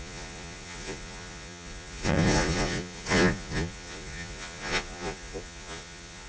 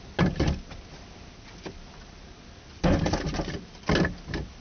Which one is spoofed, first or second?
first